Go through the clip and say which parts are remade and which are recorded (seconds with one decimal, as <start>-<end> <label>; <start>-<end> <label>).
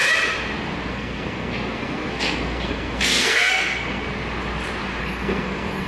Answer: 0.0-0.9 recorded; 0.9-4.0 remade; 4.0-5.0 recorded; 5.0-5.9 remade